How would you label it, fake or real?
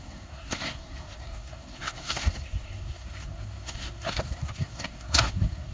fake